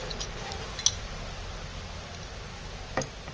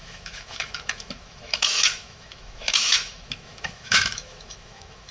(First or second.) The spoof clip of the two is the second